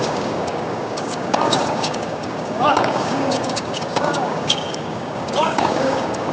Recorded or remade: remade